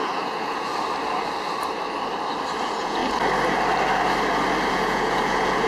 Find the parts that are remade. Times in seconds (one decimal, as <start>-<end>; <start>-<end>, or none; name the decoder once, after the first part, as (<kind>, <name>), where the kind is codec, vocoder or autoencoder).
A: 0.0-0.7 (vocoder, Vocos); 2.6-3.0; 4.7-5.7